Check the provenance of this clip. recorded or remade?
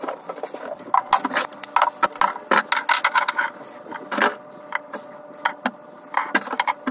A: recorded